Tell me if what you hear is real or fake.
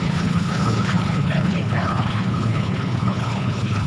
fake